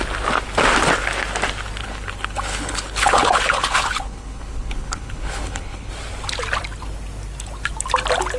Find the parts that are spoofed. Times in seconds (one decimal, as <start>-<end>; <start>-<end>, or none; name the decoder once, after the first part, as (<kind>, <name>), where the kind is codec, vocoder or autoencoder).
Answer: 1.8-5.9 (codec, HILCodec)